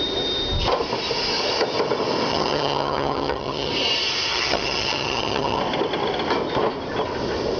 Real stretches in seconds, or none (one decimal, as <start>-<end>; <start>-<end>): 0.0-2.3; 3.7-4.3; 5.6-7.6